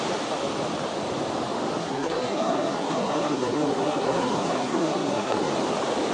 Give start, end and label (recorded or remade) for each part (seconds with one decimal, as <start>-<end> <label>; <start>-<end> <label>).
0.0-1.8 recorded; 1.8-5.5 remade; 5.5-6.1 recorded